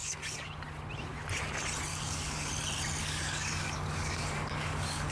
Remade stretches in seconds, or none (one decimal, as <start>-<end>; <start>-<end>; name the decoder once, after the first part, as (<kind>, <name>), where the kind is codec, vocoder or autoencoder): 0.0-0.5 (codec, DAC); 1.9-2.5; 3.0-5.1